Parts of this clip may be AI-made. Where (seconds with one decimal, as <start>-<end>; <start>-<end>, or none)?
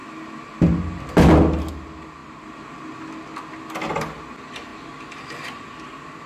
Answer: 2.2-2.8; 4.7-6.3